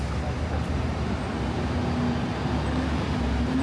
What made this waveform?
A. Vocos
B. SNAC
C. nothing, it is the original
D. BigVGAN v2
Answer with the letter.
C